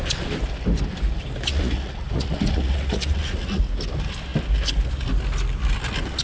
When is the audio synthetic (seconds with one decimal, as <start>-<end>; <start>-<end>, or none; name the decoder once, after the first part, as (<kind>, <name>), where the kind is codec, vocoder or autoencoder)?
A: 1.5-3.6 (vocoder, Vocos)